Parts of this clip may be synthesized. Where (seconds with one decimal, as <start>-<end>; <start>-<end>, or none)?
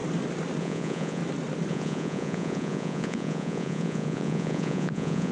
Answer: 0.6-1.2; 1.7-5.3